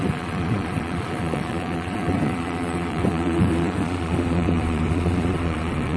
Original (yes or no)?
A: no